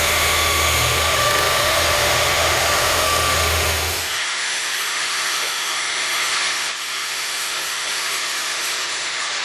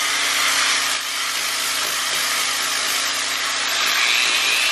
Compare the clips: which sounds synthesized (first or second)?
first